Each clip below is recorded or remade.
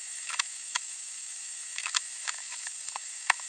remade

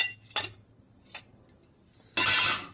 recorded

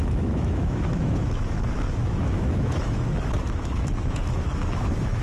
remade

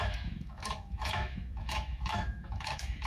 remade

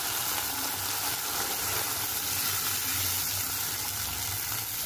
recorded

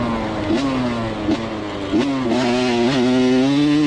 recorded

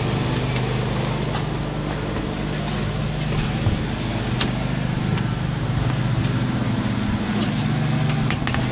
recorded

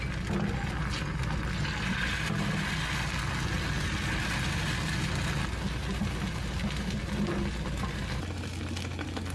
recorded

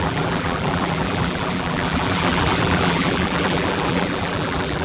remade